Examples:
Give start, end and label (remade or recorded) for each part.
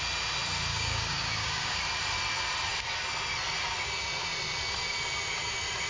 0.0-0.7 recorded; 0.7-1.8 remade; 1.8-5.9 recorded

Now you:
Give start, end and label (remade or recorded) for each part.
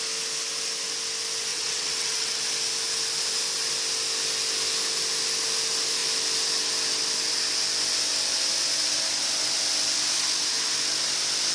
0.0-1.5 recorded; 1.5-2.4 remade; 2.4-11.5 recorded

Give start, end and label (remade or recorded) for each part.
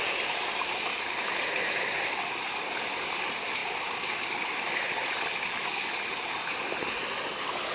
0.0-7.7 recorded